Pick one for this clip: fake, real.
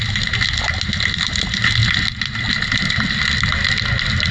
real